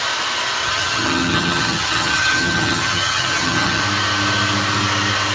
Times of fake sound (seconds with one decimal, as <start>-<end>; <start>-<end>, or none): 0.6-3.8